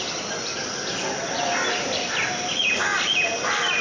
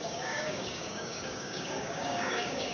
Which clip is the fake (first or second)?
second